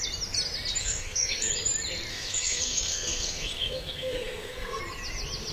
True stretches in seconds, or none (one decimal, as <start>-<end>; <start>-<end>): 0.0-0.8; 1.5-2.1; 4.8-5.5